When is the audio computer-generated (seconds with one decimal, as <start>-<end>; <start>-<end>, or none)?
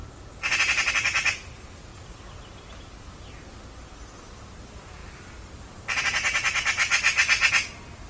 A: none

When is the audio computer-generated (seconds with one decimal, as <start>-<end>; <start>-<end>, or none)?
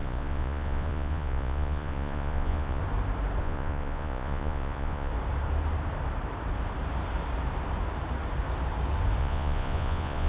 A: 0.0-2.8; 3.4-5.1; 9.2-10.3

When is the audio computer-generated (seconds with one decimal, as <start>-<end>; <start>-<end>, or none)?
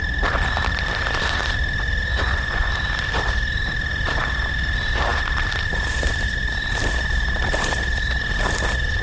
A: 2.1-2.7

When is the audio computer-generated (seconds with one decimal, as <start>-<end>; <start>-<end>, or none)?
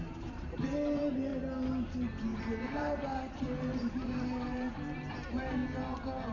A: 0.0-1.3; 2.4-5.6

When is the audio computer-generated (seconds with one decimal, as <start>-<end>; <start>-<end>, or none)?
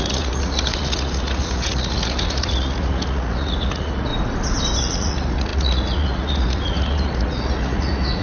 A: 0.0-4.1; 4.8-8.2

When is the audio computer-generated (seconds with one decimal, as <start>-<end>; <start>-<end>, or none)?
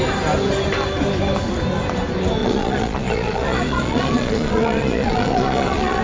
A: 2.4-6.0